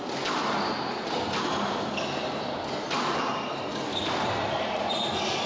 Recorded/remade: recorded